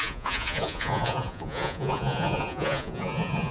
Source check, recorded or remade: remade